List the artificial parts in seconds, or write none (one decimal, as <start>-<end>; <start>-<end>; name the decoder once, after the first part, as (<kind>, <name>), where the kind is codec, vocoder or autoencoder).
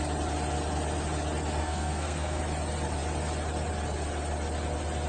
1.6-2.4 (codec, SNAC)